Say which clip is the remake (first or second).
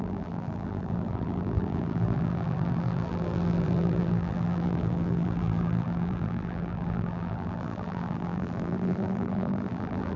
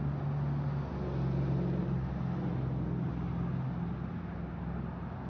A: first